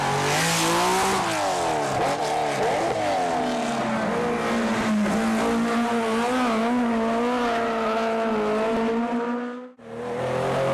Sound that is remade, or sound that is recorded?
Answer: recorded